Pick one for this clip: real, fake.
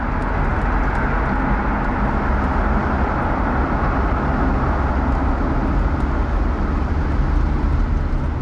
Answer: real